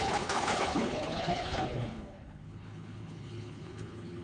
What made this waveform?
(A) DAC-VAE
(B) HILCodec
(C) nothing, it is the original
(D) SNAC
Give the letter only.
B